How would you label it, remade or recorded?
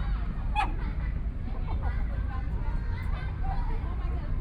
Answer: recorded